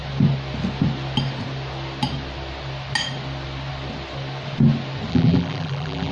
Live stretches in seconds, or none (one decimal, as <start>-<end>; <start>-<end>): 0.0-5.1